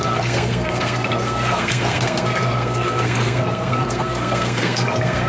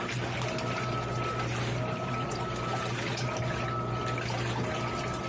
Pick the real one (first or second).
second